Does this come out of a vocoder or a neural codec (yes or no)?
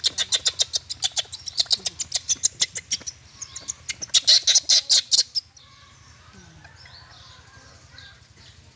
no